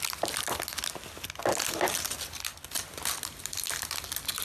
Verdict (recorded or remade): recorded